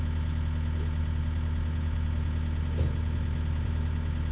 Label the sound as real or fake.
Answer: real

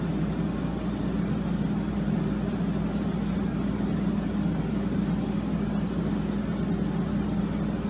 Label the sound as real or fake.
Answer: real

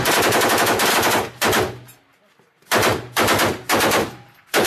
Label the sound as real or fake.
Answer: real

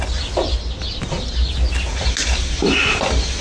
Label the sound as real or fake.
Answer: real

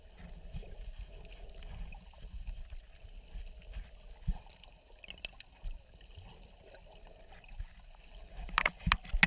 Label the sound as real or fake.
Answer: real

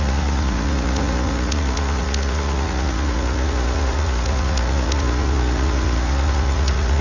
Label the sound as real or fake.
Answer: fake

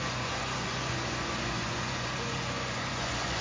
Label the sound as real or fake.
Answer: fake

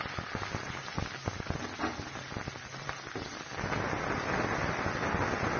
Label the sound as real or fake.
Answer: real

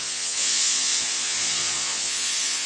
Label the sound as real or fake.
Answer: fake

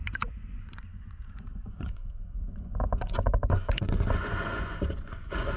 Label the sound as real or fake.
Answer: fake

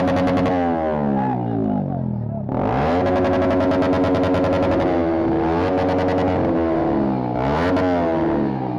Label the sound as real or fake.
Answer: real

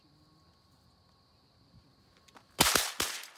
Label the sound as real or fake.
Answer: real